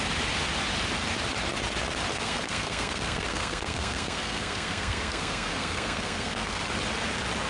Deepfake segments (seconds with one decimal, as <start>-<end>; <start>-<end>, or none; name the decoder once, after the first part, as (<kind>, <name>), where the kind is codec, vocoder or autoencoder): 2.1-6.6 (codec, SNAC)